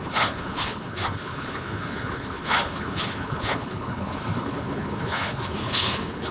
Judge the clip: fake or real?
fake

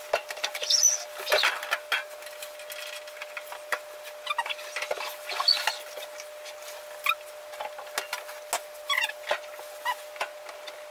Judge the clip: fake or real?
real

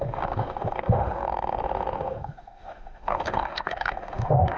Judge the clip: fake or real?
fake